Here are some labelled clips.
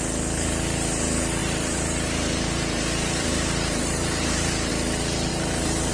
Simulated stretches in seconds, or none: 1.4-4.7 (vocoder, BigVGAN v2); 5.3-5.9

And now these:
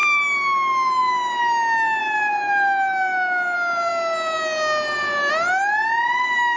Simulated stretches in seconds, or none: none

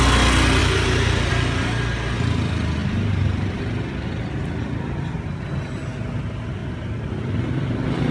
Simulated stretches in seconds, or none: 0.6-1.3 (vocoder, BigVGAN v2); 2.8-3.6; 6.6-7.1

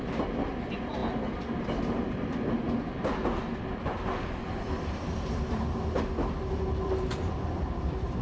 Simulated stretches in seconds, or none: none

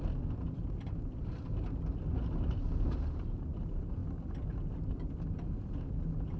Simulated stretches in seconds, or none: none